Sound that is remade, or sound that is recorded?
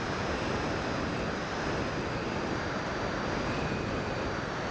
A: recorded